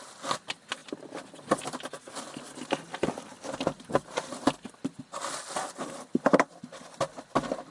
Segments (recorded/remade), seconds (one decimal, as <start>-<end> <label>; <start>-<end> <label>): 0.0-7.7 recorded